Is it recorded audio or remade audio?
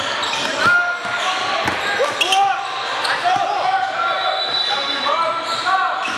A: recorded